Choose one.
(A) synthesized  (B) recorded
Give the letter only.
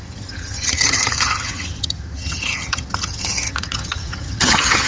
A